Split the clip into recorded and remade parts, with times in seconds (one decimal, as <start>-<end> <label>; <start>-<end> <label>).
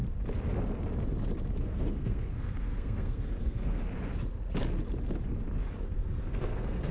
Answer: 0.0-1.6 recorded; 1.6-3.8 remade; 3.8-5.8 recorded; 5.8-6.9 remade